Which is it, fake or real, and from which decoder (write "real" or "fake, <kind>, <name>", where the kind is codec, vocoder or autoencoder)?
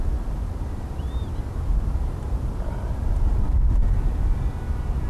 real